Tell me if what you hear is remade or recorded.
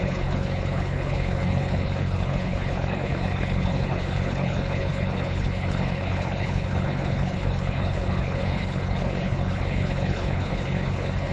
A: remade